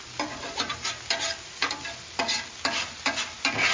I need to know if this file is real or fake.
real